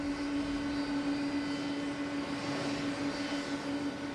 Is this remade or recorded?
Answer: recorded